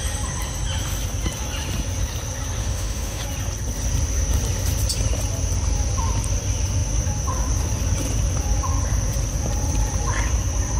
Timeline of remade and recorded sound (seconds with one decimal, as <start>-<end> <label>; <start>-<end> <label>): 0.0-2.6 recorded; 2.6-3.2 remade; 3.2-10.8 recorded